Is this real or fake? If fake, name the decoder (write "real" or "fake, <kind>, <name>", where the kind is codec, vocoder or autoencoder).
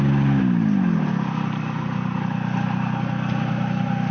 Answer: real